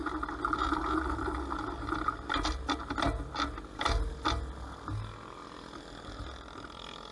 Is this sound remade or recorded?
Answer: recorded